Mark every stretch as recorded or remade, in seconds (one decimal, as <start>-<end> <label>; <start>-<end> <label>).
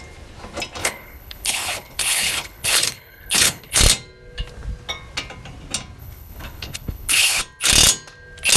0.0-0.8 recorded; 0.8-3.8 remade; 3.8-6.0 recorded; 6.0-7.4 remade; 7.4-8.6 recorded